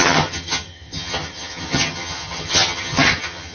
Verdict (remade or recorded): remade